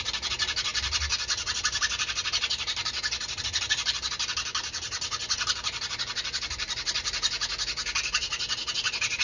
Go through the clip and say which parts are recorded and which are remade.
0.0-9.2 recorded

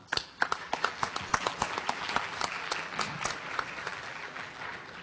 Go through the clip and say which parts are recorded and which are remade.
0.0-3.0 remade; 3.0-3.9 recorded; 3.9-4.6 remade; 4.6-5.0 recorded

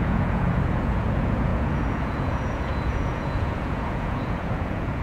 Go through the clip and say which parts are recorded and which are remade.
0.0-5.0 remade

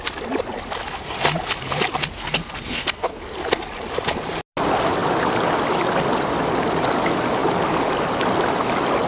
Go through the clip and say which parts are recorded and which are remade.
0.0-2.2 recorded; 2.2-3.2 remade; 3.2-9.1 recorded

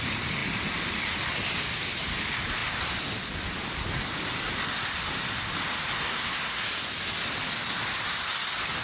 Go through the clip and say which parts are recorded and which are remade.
0.0-6.0 recorded; 6.0-6.6 remade; 6.6-8.8 recorded

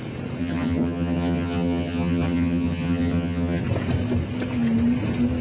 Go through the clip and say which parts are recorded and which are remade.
0.0-0.4 recorded; 0.4-3.6 remade; 3.6-5.4 recorded

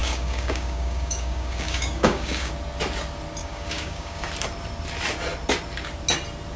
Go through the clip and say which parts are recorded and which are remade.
0.0-2.5 remade; 2.5-3.4 recorded; 3.4-4.3 remade; 4.3-6.6 recorded